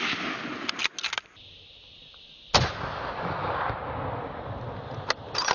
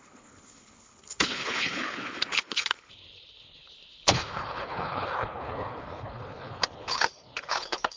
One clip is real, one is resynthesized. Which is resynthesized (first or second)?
second